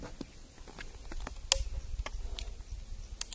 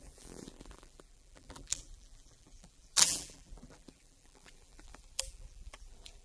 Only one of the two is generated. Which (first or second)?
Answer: second